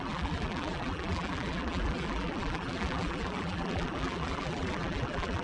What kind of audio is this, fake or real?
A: fake